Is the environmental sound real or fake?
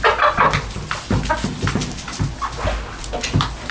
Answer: real